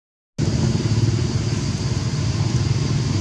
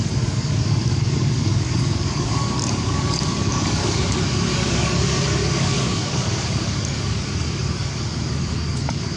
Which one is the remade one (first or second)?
second